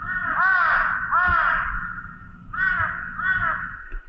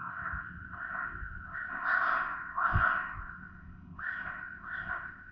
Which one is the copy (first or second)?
second